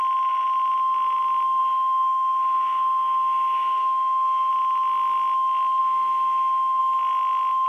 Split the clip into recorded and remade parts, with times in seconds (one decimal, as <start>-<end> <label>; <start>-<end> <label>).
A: 0.0-1.6 recorded; 1.6-4.5 remade; 4.5-5.8 recorded; 5.8-6.8 remade; 6.8-7.7 recorded